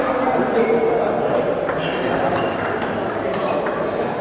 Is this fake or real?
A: real